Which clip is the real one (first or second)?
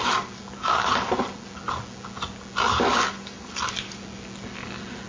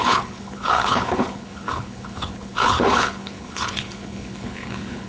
first